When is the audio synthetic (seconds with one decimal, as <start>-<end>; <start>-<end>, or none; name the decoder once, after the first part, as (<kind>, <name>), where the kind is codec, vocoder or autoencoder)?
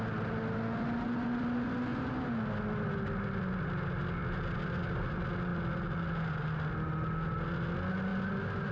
none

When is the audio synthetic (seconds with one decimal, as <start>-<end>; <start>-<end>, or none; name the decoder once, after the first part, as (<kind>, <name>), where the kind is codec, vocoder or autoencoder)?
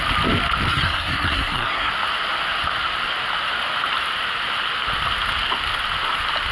0.7-1.9 (codec, SNAC)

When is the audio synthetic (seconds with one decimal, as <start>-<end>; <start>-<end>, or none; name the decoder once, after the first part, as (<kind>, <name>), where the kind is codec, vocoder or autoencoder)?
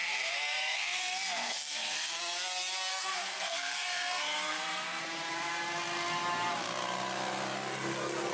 0.0-2.2 (codec, SNAC); 2.9-5.0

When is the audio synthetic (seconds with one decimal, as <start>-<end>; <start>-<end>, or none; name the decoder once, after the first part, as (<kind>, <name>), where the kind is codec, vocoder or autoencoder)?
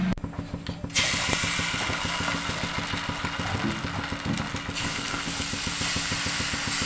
4.8-5.3 (codec, SNAC)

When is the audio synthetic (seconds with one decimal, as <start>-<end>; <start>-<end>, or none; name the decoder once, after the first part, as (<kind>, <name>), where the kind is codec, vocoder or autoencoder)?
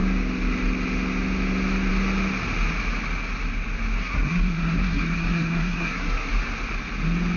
4.0-6.3 (codec, SNAC)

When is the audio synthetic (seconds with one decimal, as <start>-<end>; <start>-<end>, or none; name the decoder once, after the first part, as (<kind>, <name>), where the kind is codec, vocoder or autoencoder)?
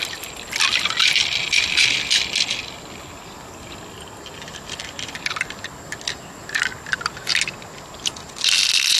none